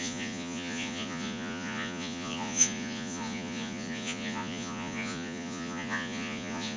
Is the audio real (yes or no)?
no